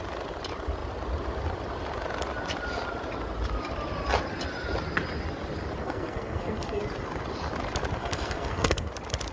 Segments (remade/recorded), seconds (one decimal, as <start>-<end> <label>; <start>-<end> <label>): 0.0-5.8 recorded; 5.8-6.8 remade; 6.8-8.0 recorded; 8.0-8.9 remade; 8.9-9.3 recorded